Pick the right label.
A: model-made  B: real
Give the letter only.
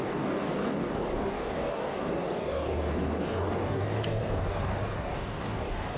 A